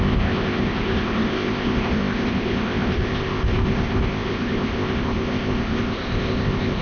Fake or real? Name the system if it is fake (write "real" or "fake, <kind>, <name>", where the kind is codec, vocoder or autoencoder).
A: fake, codec, ZipCodec